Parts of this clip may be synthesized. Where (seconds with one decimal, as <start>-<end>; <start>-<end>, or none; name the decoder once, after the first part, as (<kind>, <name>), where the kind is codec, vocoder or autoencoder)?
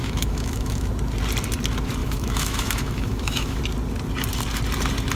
0.0-0.9 (autoencoder, DAC-VAE); 2.0-3.6